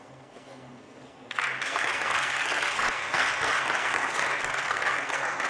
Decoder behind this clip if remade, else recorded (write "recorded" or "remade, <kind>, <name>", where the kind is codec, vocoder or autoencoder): remade, codec, SNAC